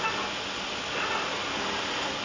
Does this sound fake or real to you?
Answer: real